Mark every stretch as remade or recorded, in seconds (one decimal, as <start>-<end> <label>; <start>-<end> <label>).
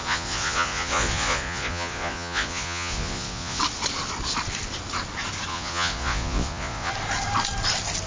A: 0.0-3.6 remade; 3.6-5.5 recorded; 5.5-6.9 remade; 6.9-8.1 recorded